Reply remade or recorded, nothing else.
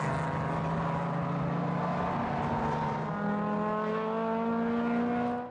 recorded